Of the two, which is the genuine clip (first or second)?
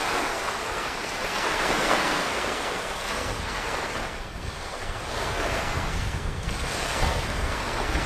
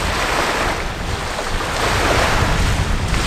second